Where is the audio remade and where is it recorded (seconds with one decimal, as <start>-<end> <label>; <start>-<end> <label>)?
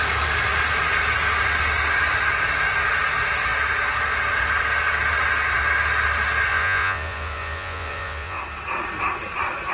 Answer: 0.0-6.5 recorded; 6.5-8.4 remade; 8.4-9.7 recorded